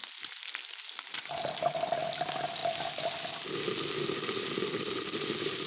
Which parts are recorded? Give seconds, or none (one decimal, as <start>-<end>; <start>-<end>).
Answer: 0.0-5.7